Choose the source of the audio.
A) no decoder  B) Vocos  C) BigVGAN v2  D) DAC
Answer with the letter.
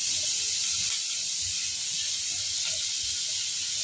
A